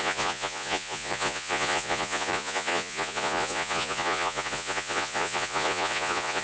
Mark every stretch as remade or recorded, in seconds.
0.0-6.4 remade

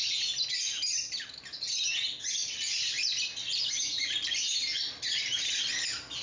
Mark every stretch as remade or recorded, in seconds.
0.0-6.2 recorded